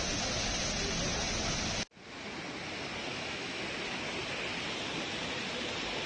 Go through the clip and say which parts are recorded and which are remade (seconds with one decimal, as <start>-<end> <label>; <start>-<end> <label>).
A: 0.0-3.1 recorded; 3.1-3.6 remade; 3.6-6.1 recorded

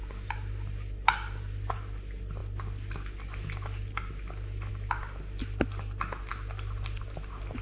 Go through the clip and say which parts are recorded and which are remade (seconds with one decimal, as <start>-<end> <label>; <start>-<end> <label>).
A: 0.0-7.6 recorded

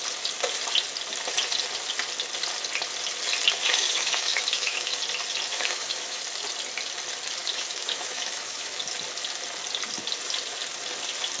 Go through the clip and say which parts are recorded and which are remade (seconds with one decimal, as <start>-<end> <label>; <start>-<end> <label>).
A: 0.0-3.6 recorded; 3.6-5.0 remade; 5.0-5.5 recorded; 5.5-6.2 remade; 6.2-7.4 recorded; 7.4-8.8 remade; 8.8-11.4 recorded

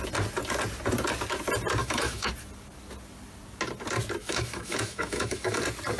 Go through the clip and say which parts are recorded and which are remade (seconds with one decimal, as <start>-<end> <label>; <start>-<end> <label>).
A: 0.0-1.8 recorded; 1.8-2.3 remade; 2.3-4.2 recorded; 4.2-5.6 remade; 5.6-6.0 recorded

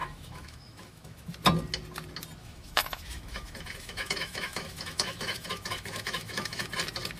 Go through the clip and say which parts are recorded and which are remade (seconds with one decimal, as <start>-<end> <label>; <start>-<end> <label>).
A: 0.0-1.3 remade; 1.3-2.4 recorded; 2.4-6.7 remade; 6.7-7.2 recorded

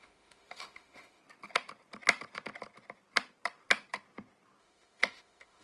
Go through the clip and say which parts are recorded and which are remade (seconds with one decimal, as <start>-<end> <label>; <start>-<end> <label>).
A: 0.0-1.2 remade; 1.2-4.6 recorded; 4.6-5.6 remade

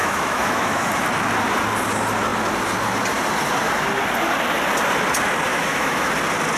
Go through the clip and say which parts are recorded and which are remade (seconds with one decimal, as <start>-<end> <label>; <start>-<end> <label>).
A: 0.0-0.9 remade; 0.9-5.5 recorded; 5.5-6.1 remade; 6.1-6.6 recorded